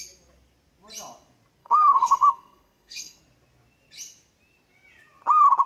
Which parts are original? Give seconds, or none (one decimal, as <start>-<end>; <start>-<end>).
0.0-1.6; 3.2-5.7